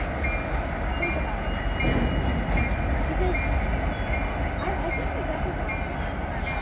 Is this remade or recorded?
recorded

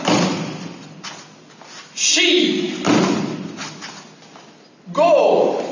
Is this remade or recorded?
recorded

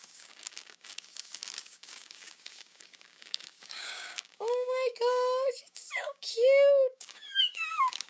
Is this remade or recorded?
remade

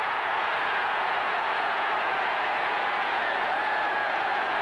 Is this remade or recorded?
remade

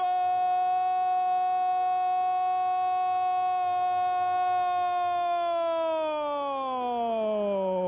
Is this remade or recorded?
recorded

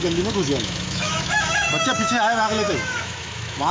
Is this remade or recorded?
remade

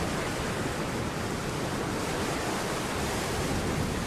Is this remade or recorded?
remade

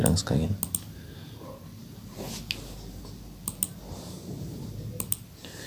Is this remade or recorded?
recorded